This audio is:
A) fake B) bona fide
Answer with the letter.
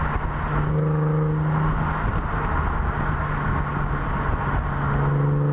B